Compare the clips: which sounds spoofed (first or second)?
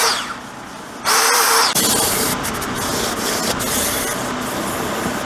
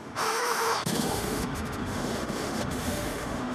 second